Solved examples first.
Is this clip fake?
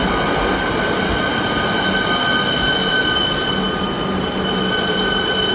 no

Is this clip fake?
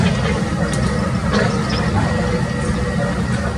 no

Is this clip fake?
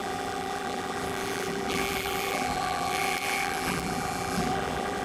yes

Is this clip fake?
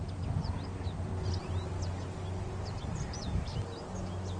no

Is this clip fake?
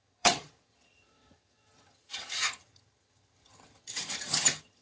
yes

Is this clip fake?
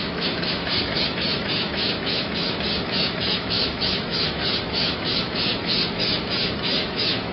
yes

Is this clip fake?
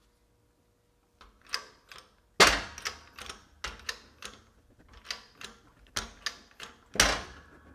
no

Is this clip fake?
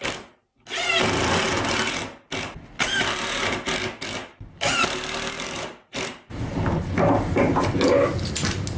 no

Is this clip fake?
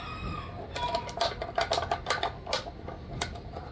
no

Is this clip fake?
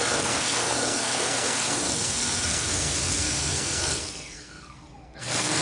yes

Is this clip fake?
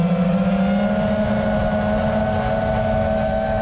no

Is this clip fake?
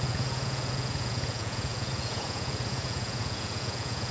yes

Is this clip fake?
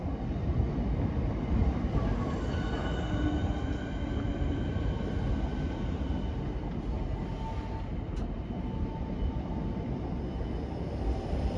no